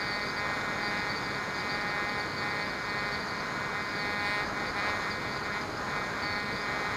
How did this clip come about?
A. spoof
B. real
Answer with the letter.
B